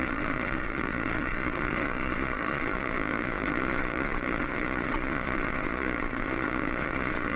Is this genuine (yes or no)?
no